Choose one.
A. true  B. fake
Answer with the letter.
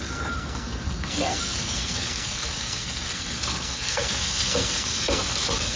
B